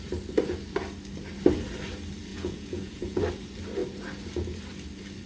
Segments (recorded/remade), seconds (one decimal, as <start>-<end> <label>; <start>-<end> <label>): 0.0-2.3 recorded; 2.3-3.2 remade; 3.2-5.3 recorded